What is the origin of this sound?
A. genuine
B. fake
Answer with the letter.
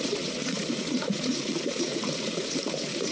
B